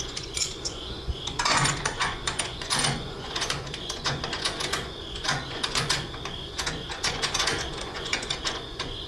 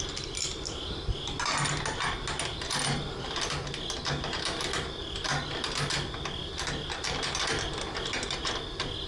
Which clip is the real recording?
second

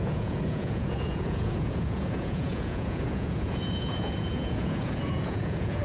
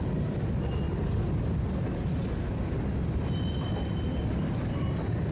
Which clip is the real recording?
second